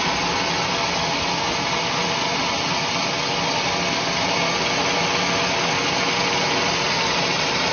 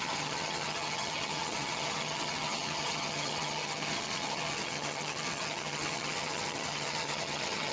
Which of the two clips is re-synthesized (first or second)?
second